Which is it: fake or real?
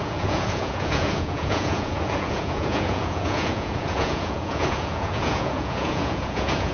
fake